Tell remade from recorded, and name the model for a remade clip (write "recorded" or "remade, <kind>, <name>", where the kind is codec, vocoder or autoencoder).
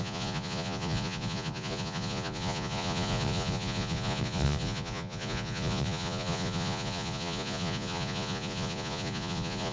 remade, vocoder, Vocos